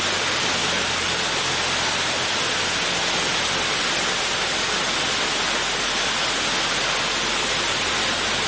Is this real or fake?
real